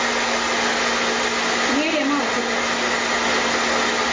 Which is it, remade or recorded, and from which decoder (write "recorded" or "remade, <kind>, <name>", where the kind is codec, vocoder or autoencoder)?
recorded